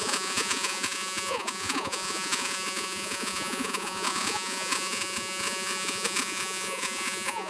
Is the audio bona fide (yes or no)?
no